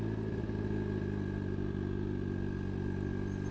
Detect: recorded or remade recorded